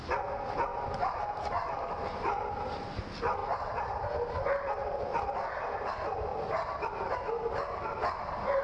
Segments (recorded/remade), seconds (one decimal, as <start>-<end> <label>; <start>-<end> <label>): 0.0-0.7 recorded; 0.7-3.0 remade; 3.0-3.4 recorded; 3.4-5.0 remade; 5.0-8.6 recorded